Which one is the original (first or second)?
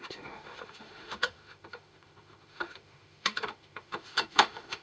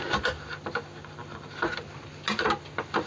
second